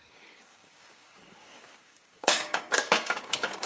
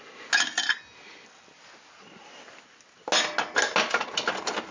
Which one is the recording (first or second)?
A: second